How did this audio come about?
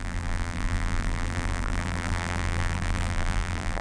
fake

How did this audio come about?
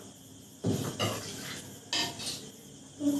real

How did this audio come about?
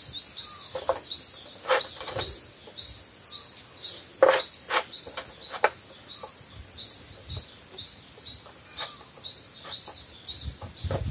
real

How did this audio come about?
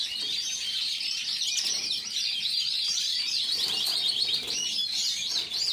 fake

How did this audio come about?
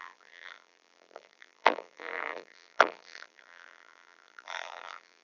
fake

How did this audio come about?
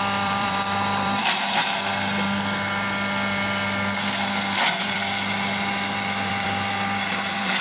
fake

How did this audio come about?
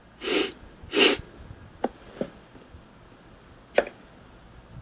real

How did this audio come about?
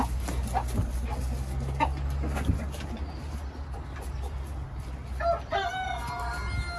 real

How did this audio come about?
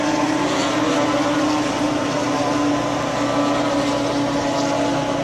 real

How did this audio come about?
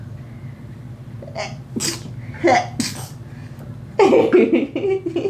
real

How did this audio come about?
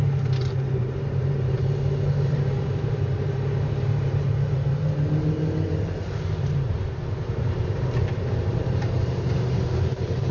fake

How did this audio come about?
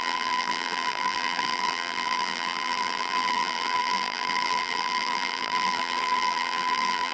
fake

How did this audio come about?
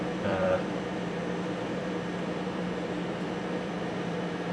fake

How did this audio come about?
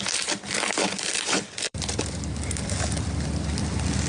fake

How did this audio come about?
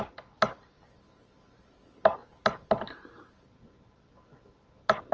real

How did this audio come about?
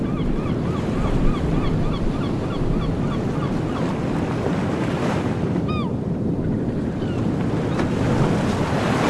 real